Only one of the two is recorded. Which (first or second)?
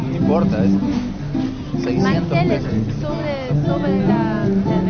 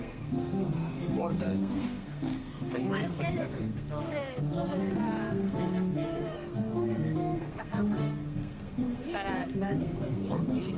first